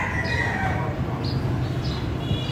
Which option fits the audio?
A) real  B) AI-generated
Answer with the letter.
A